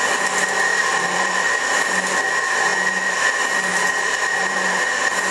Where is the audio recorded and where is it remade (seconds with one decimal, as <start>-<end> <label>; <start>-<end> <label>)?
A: 0.0-0.7 recorded; 0.7-1.5 remade; 1.5-2.7 recorded; 2.7-3.2 remade; 3.2-3.7 recorded; 3.7-4.8 remade; 4.8-5.3 recorded